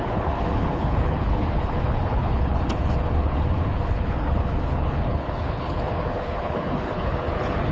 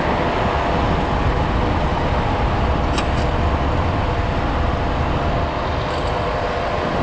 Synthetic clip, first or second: first